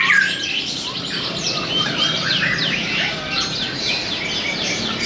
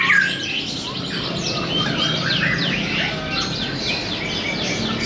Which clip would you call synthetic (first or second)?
first